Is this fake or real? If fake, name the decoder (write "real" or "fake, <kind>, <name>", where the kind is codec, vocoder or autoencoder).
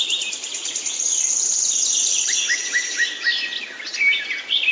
real